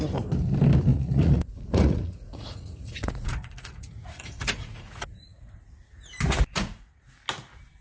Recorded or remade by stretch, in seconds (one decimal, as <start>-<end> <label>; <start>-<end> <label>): 0.0-0.9 recorded; 0.9-5.6 remade; 5.6-6.5 recorded; 6.5-7.1 remade; 7.1-7.8 recorded